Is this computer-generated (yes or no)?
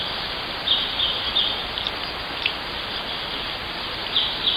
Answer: no